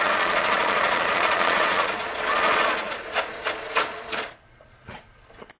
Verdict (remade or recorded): remade